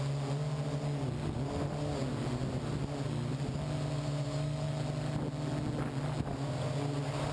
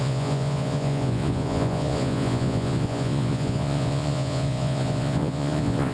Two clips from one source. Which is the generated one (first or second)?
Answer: second